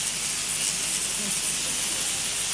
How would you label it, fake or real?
real